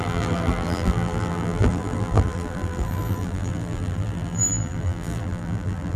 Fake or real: fake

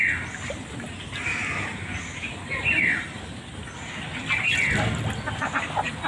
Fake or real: real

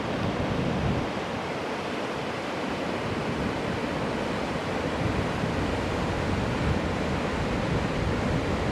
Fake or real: fake